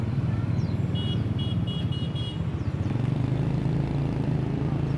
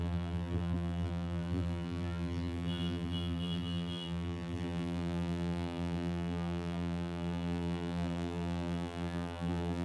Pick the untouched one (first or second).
first